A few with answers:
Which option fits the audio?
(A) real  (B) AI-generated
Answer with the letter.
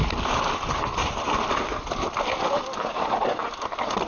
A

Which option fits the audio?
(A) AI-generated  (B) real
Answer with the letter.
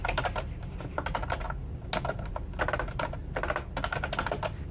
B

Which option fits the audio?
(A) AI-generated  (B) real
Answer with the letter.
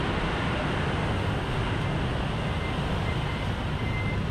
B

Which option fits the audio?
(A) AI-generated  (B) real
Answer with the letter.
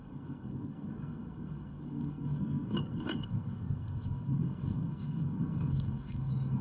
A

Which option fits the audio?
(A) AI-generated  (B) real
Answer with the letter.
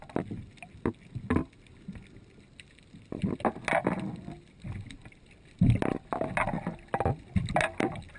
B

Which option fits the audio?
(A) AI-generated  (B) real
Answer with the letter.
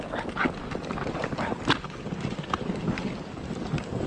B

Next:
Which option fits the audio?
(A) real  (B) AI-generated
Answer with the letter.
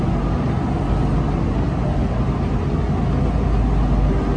A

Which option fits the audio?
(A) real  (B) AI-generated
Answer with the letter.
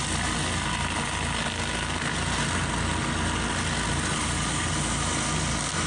A